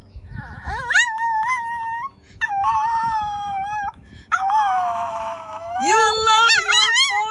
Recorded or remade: remade